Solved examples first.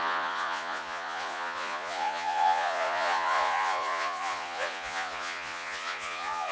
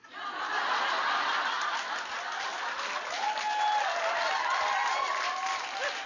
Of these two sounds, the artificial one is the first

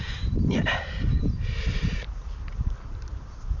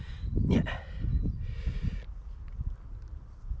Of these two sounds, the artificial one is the first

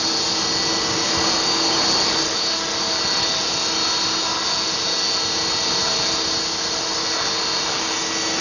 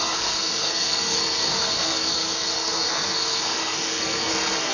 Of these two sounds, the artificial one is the second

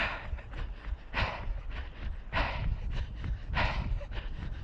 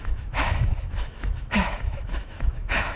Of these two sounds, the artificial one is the second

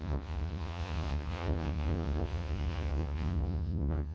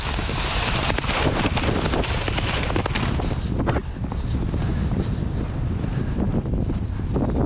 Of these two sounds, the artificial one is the first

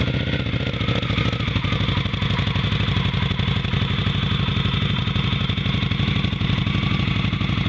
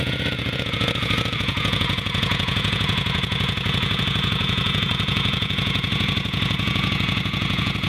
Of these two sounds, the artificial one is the second